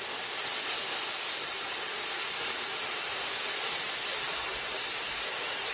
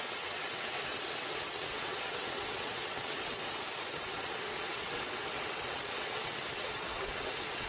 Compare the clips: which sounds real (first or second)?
first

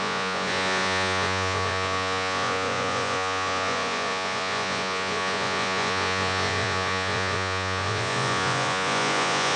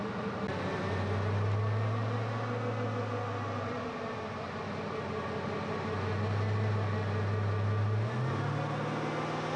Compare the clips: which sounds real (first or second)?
second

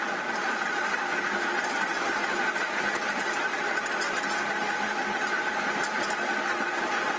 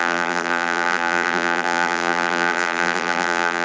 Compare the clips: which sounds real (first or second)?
first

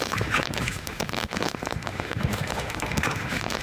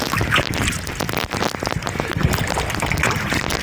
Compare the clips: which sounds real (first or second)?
second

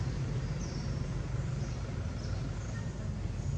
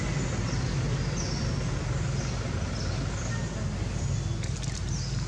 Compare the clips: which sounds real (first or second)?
second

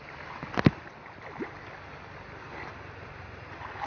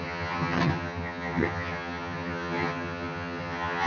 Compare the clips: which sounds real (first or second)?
first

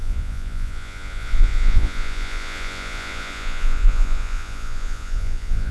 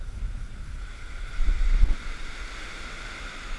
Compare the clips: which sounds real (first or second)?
second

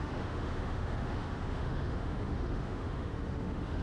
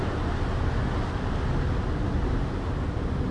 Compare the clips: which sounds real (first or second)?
second